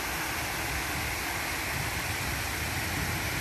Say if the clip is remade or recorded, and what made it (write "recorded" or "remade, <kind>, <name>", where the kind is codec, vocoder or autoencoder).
recorded